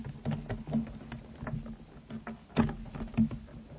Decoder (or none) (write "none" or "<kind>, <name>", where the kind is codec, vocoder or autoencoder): none